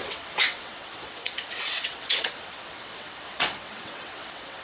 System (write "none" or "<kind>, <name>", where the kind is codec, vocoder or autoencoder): vocoder, WaveNeXt